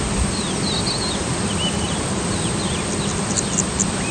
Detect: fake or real real